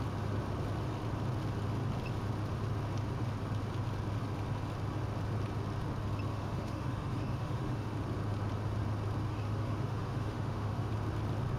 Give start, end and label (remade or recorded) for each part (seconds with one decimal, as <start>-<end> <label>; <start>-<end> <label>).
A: 0.0-6.3 recorded; 6.3-7.9 remade; 7.9-9.3 recorded; 9.3-10.9 remade; 10.9-11.6 recorded